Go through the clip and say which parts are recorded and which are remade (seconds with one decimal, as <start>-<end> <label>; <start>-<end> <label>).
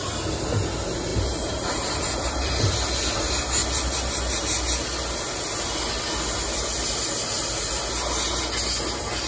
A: 0.0-1.1 recorded; 1.1-2.0 remade; 2.0-9.3 recorded